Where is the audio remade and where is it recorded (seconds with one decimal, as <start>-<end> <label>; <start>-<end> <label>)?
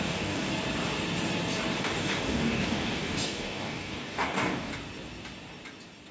0.0-0.5 remade; 0.5-1.8 recorded; 1.8-4.7 remade; 4.7-6.1 recorded